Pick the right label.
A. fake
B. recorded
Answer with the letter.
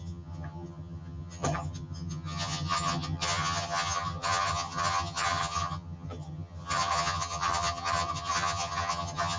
A